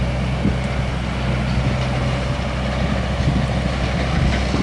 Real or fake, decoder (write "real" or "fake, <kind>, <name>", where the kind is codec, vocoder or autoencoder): real